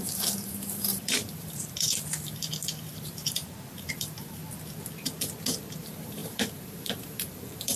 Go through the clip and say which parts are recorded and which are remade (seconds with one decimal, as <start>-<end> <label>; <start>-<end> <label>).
0.0-4.4 remade; 4.4-5.8 recorded; 5.8-7.8 remade